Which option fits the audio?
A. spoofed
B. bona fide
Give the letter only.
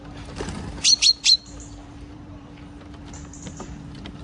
A